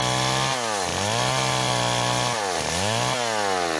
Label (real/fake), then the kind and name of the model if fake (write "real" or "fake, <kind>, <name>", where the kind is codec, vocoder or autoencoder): real